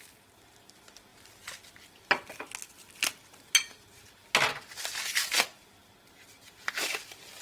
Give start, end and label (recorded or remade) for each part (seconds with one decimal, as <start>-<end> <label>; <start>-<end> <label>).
0.0-7.4 recorded